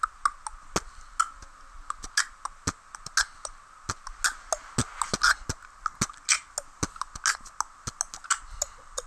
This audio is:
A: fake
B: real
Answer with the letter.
B